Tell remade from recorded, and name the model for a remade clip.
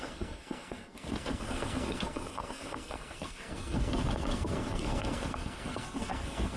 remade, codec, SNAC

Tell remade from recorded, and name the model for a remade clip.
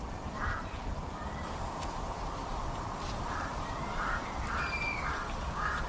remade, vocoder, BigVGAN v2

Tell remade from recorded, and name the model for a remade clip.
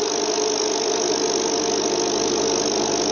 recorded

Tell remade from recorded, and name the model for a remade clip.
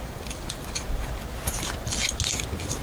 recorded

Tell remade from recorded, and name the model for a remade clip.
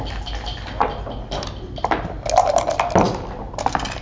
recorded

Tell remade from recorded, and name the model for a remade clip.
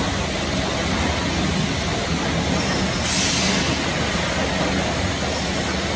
recorded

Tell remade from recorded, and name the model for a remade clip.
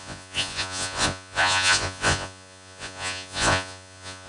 remade, vocoder, Vocos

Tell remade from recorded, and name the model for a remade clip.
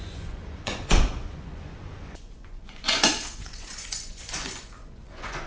remade, vocoder, Vocos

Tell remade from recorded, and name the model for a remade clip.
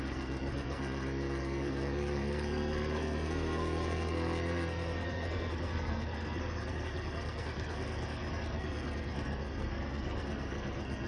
remade, codec, SNAC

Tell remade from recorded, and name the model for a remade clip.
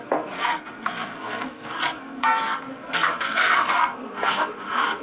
remade, codec, SNAC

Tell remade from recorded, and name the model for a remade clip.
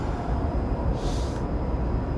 recorded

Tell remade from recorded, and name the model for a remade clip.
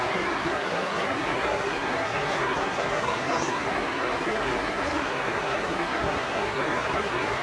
remade, codec, SNAC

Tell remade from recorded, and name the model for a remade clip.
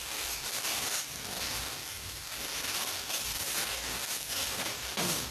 remade, codec, DAC